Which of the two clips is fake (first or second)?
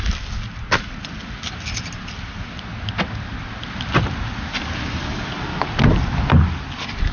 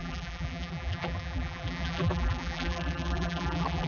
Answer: second